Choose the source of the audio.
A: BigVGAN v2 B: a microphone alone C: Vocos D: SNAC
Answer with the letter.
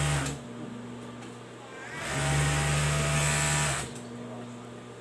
B